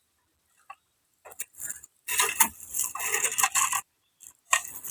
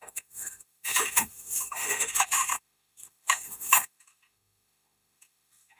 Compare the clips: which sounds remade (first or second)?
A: second